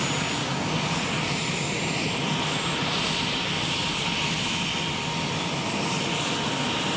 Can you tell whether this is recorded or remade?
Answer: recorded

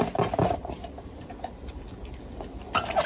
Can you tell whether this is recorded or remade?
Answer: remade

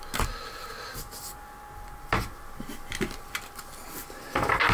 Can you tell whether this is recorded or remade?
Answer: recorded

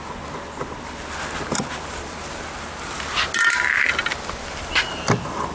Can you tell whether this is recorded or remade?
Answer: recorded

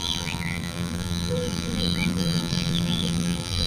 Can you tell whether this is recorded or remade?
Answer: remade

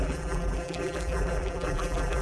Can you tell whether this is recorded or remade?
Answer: remade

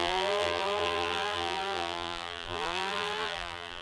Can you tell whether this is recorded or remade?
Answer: remade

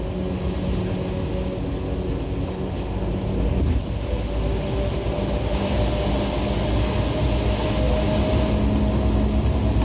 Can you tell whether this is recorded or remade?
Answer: recorded